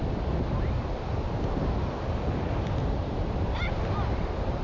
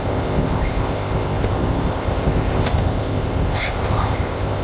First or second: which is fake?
second